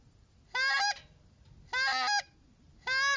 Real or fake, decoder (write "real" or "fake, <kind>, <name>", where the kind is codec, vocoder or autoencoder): real